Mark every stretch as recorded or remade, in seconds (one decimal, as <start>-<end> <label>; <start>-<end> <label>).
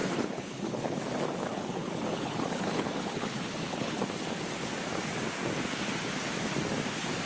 0.0-1.0 remade; 1.0-1.5 recorded; 1.5-4.0 remade; 4.0-7.3 recorded